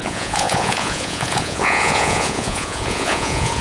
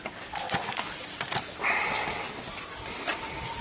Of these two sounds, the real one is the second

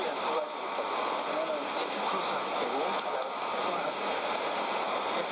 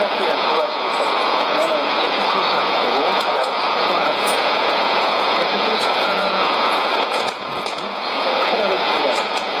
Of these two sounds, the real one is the first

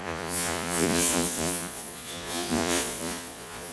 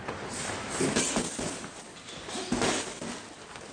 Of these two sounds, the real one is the second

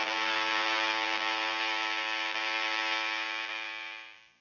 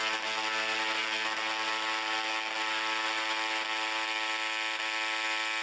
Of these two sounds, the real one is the second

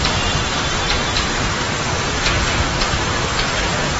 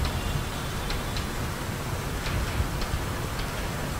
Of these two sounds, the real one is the second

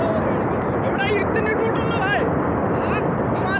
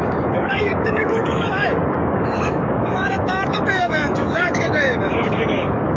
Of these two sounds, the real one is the first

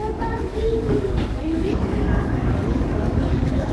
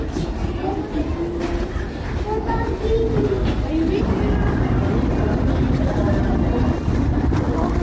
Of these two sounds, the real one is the second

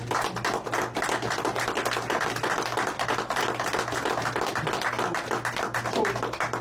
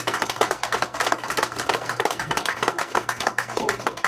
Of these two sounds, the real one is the first